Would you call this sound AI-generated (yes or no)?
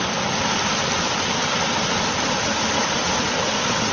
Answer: no